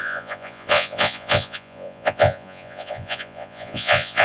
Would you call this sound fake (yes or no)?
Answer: yes